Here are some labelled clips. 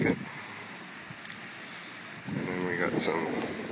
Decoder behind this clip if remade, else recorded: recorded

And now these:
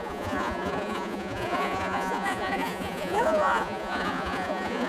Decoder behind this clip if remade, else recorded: remade, vocoder, Vocos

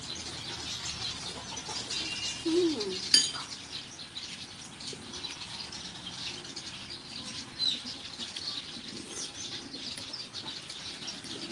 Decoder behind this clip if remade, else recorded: recorded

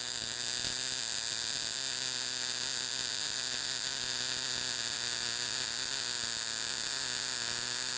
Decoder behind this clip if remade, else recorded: recorded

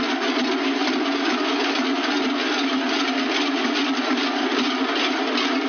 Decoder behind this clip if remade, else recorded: recorded